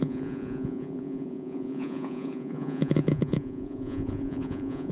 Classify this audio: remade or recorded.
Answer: remade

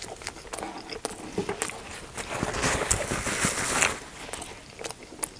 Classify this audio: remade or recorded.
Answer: recorded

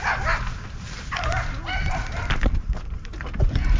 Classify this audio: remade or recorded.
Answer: recorded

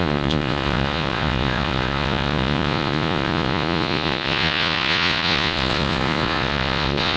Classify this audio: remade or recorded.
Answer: remade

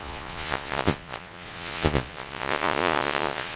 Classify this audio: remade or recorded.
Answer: remade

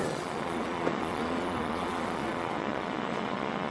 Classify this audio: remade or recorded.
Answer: remade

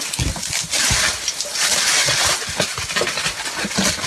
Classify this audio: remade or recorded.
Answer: recorded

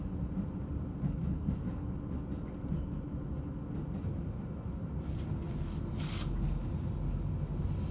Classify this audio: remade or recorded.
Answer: recorded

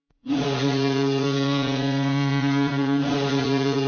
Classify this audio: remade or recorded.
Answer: remade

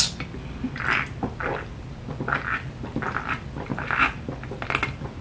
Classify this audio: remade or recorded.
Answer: recorded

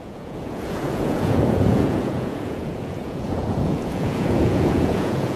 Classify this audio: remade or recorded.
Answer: remade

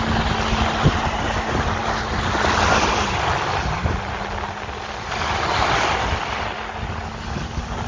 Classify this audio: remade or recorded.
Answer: recorded